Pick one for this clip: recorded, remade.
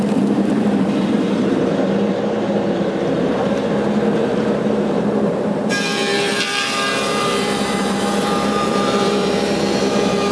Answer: remade